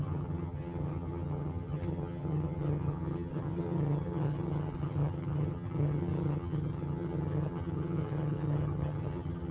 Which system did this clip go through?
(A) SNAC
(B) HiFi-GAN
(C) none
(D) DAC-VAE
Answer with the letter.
B